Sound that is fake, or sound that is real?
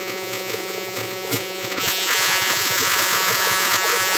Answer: fake